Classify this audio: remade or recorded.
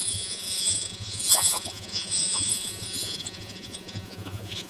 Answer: remade